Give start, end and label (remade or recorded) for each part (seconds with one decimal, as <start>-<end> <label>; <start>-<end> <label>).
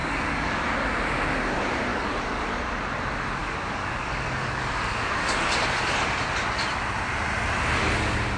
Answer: 0.0-0.6 remade; 0.6-1.9 recorded; 1.9-2.6 remade; 2.6-3.4 recorded; 3.4-5.4 remade; 5.4-8.4 recorded